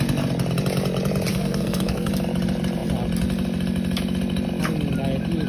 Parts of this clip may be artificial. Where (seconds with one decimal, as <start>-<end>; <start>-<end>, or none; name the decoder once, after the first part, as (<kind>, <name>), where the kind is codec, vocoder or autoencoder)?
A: 1.3-2.1 (codec, SNAC)